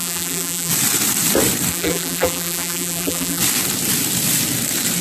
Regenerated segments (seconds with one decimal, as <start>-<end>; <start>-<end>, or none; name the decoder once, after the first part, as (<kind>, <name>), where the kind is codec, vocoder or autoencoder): 0.0-0.7 (vocoder, BigVGAN v2); 1.7-3.4